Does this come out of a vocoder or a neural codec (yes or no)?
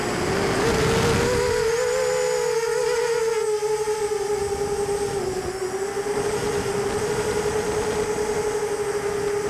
no